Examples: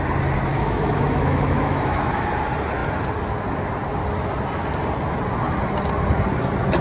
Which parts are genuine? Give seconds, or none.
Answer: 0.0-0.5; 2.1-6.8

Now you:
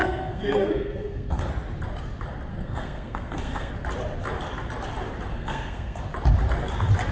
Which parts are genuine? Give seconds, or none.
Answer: 1.5-2.5; 3.7-5.3; 6.0-7.1

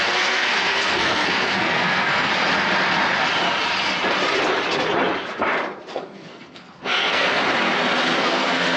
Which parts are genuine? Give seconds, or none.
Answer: 2.3-5.9; 7.4-8.2

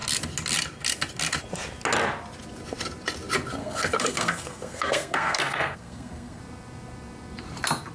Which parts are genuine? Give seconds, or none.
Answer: 0.0-3.6; 6.4-7.9